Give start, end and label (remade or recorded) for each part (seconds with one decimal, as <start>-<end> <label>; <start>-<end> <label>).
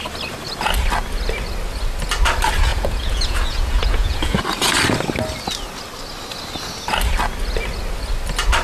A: 0.0-2.7 recorded; 2.7-4.4 remade; 4.4-8.6 recorded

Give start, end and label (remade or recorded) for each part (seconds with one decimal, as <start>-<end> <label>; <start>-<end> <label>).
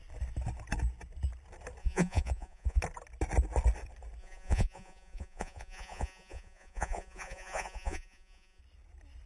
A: 0.0-1.8 recorded; 1.8-2.8 remade; 2.8-4.2 recorded; 4.2-8.6 remade; 8.6-9.3 recorded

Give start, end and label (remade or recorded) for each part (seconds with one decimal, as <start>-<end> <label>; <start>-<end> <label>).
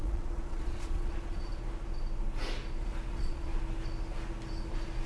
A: 0.0-1.5 remade; 1.5-3.1 recorded; 3.1-3.5 remade; 3.5-5.1 recorded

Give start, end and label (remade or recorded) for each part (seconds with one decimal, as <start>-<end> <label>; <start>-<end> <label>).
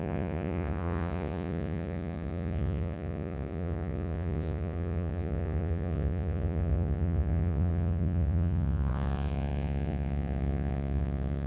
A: 0.0-11.5 remade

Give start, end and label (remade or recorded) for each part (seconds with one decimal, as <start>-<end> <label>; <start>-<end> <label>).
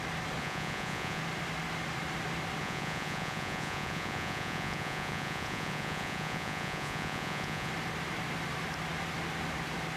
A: 0.0-0.4 recorded; 0.4-1.2 remade; 1.2-2.6 recorded; 2.6-7.7 remade; 7.7-10.0 recorded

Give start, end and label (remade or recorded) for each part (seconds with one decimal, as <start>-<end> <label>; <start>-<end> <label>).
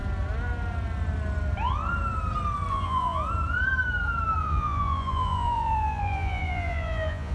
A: 0.0-2.7 recorded; 2.7-3.2 remade; 3.2-4.4 recorded; 4.4-7.3 remade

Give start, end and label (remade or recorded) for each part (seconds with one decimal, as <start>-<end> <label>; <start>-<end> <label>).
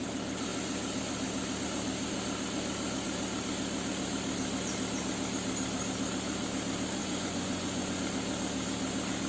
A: 0.0-7.0 recorded; 7.0-8.0 remade; 8.0-9.3 recorded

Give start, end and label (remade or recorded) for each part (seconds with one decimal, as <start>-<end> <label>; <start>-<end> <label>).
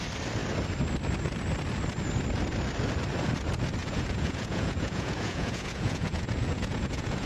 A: 0.0-3.8 recorded; 3.8-7.3 remade